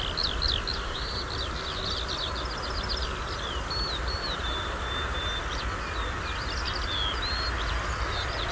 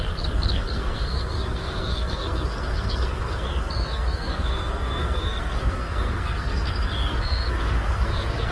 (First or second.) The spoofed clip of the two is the second